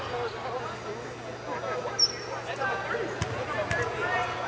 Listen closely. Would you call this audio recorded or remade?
recorded